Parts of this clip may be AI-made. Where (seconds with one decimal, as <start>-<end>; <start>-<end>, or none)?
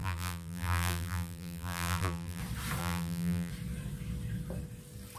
0.0-2.4; 2.8-3.5